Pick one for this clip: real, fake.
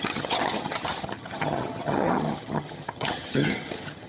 fake